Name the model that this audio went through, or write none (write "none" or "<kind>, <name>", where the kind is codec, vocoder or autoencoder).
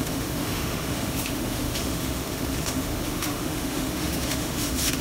autoencoder, DAC-VAE